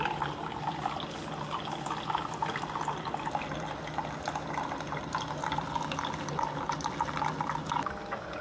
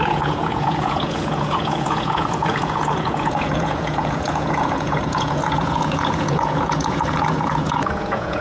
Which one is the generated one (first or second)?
second